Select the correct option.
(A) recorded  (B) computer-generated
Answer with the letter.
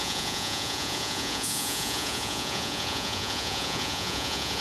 B